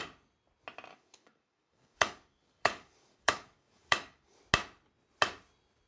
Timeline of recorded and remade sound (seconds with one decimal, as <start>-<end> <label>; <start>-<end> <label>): 0.0-0.9 recorded; 0.9-4.4 remade; 4.4-5.9 recorded